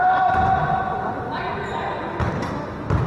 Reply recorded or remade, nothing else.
recorded